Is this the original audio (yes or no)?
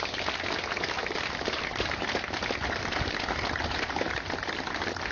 yes